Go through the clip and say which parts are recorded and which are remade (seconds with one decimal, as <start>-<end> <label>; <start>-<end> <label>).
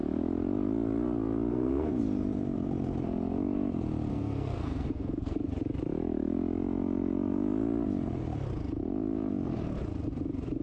0.0-1.5 recorded; 1.5-2.0 remade; 2.0-4.1 recorded; 4.1-5.5 remade; 5.5-10.6 recorded